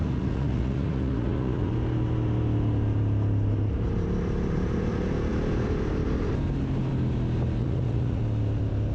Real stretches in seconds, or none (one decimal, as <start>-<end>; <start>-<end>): 1.7-7.6; 8.2-8.9